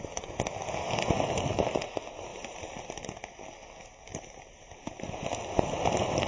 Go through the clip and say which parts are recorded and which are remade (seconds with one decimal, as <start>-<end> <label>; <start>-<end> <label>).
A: 0.0-2.3 recorded; 2.3-2.8 remade; 2.8-4.1 recorded; 4.1-5.0 remade; 5.0-6.3 recorded